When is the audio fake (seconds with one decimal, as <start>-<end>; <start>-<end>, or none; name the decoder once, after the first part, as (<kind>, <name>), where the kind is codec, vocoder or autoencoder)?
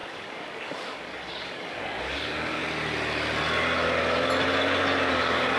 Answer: 0.0-2.6 (codec, DAC); 5.1-5.6